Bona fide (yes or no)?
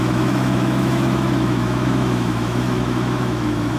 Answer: no